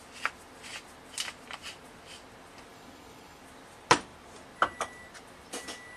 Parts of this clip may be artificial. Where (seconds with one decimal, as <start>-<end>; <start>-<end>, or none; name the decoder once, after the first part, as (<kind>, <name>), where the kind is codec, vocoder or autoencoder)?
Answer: 2.7-3.4 (codec, DAC)